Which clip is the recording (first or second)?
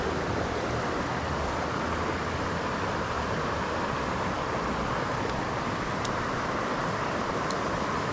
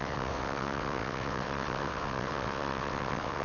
first